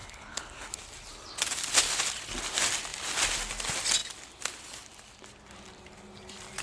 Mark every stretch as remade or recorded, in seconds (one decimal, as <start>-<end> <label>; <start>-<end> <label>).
0.0-0.7 remade; 0.7-6.6 recorded